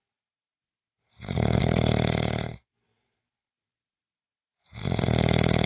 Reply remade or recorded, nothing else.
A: remade